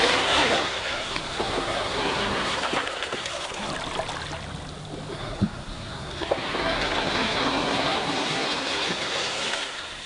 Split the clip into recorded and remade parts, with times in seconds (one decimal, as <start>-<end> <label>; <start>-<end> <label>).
0.0-3.7 remade; 3.7-5.1 recorded; 5.1-10.1 remade